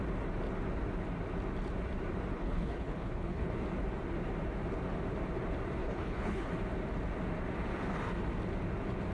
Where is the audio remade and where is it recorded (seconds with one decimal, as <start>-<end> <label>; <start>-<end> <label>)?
0.0-2.3 recorded; 2.3-3.5 remade; 3.5-5.8 recorded; 5.8-6.5 remade; 6.5-9.1 recorded

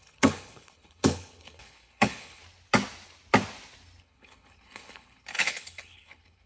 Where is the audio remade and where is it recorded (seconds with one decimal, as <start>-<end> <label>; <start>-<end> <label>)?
0.0-2.4 remade; 2.4-4.0 recorded; 4.0-6.5 remade